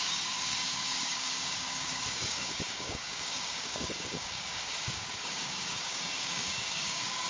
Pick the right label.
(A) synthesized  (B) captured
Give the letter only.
A